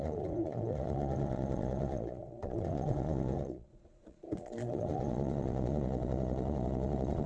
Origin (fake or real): fake